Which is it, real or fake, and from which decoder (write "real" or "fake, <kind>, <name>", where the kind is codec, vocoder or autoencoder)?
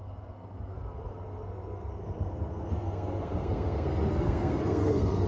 fake, codec, SNAC